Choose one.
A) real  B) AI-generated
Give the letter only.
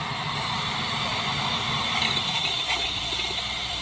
B